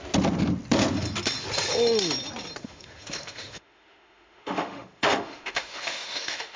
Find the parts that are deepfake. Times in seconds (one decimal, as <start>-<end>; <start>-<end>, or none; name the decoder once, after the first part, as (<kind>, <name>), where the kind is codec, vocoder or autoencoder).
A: 2.6-6.6 (autoencoder, DAC-VAE)